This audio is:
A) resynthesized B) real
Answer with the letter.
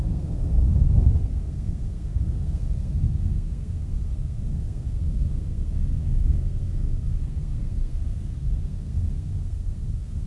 A